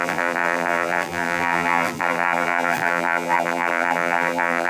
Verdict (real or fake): fake